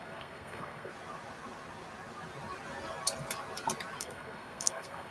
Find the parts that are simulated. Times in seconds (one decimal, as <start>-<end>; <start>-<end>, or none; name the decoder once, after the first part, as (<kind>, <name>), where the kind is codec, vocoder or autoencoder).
0.0-0.9 (codec, SNAC); 4.0-5.1

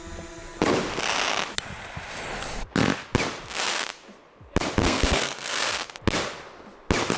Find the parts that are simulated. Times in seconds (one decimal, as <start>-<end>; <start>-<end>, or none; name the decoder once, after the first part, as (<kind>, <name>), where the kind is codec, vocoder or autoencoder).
4.8-5.7 (codec, SNAC)